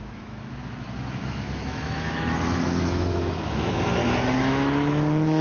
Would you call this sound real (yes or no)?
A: no